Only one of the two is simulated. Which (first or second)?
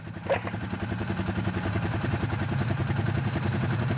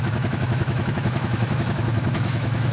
second